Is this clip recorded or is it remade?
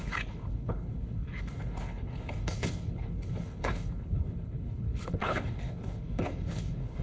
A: remade